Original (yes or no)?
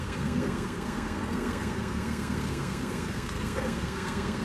no